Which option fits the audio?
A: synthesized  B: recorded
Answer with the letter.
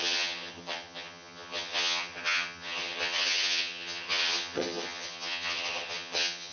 A